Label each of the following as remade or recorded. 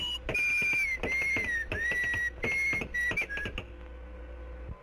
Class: recorded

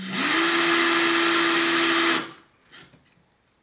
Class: recorded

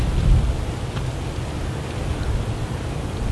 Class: recorded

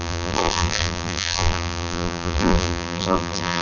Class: remade